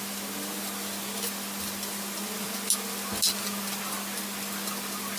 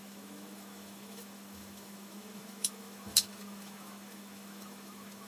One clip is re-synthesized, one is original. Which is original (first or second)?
first